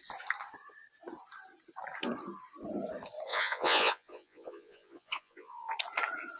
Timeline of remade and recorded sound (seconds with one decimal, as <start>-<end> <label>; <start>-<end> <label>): 0.0-3.3 recorded; 3.3-5.7 remade; 5.7-6.4 recorded